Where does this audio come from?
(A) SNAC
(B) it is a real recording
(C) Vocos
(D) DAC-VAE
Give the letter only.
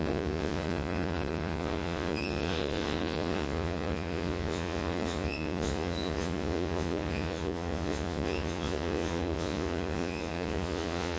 C